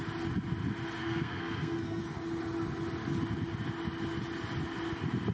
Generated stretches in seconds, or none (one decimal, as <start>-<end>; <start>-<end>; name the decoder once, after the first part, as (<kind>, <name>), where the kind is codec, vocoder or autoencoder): 1.0-2.0 (codec, SNAC)